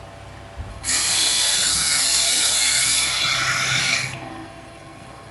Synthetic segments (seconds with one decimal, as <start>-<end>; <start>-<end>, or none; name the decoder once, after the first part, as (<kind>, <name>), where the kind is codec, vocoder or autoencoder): 0.7-3.2 (codec, SNAC); 3.8-5.3